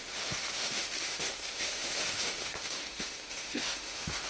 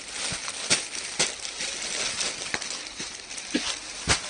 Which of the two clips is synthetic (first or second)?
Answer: first